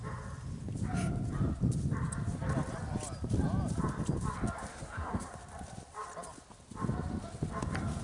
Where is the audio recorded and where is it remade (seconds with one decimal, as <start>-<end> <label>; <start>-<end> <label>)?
0.0-4.7 recorded; 4.7-5.3 remade; 5.3-8.0 recorded